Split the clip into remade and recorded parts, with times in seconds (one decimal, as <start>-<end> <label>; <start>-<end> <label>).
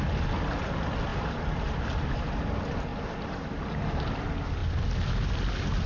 0.0-1.1 recorded; 1.1-1.6 remade; 1.6-2.9 recorded; 2.9-3.5 remade; 3.5-5.9 recorded